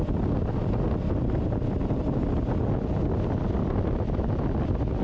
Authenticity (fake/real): real